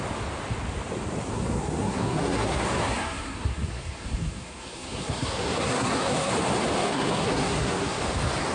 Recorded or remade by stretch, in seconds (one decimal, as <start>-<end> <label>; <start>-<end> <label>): 0.0-1.3 recorded; 1.3-6.3 remade; 6.3-6.8 recorded; 6.8-8.0 remade; 8.0-8.5 recorded